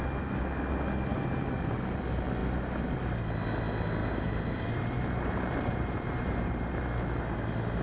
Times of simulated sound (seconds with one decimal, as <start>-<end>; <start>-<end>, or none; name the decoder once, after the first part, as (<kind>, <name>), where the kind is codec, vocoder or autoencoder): 1.1-2.0 (vocoder, BigVGAN v2); 4.0-6.8